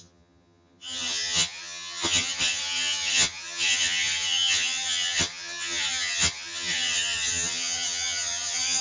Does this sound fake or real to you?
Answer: fake